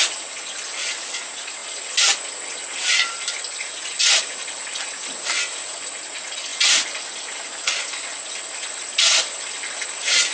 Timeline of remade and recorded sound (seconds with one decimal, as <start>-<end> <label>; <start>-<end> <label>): 0.0-10.3 recorded